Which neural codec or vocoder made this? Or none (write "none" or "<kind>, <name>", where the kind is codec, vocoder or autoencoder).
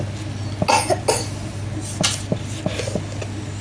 none